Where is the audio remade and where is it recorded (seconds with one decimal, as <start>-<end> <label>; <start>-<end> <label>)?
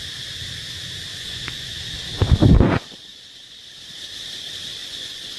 0.0-1.1 recorded; 1.1-1.7 remade; 1.7-2.5 recorded; 2.5-3.5 remade; 3.5-4.8 recorded; 4.8-5.4 remade